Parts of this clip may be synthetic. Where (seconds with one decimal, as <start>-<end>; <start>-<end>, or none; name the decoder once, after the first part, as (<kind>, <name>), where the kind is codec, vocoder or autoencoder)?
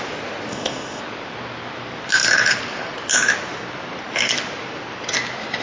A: 0.5-1.0 (codec, ZipCodec)